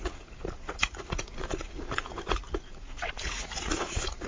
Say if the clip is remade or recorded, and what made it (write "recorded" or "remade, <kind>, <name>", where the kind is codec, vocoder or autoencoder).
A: remade, vocoder, Vocos